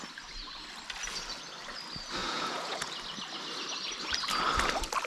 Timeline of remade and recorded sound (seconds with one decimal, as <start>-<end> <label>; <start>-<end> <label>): 0.0-2.2 recorded; 2.2-2.9 remade; 2.9-5.1 recorded

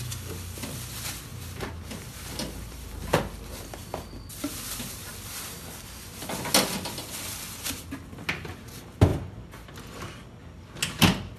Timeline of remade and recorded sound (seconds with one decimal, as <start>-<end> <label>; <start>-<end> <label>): 0.0-1.3 recorded; 1.3-3.2 remade; 3.2-11.4 recorded

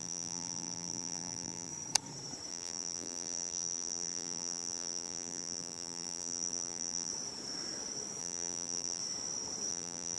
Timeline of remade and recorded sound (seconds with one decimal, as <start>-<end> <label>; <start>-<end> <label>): 0.0-1.7 remade; 1.7-2.5 recorded; 2.5-7.1 remade; 7.1-8.2 recorded; 8.2-9.0 remade; 9.0-9.7 recorded; 9.7-10.2 remade

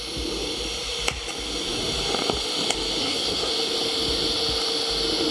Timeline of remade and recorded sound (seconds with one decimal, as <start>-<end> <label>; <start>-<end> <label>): 0.0-3.0 recorded; 3.0-3.5 remade; 3.5-5.3 recorded